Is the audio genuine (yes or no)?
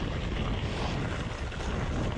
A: yes